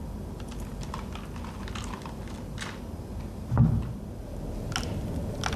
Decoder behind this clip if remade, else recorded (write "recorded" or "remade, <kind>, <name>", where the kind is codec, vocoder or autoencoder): recorded